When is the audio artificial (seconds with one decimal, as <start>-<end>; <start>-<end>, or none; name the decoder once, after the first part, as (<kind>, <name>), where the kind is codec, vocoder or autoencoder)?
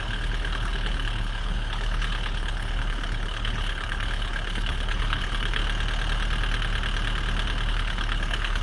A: 0.0-5.6 (codec, HILCodec); 7.7-8.6